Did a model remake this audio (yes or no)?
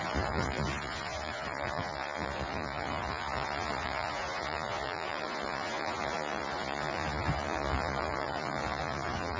yes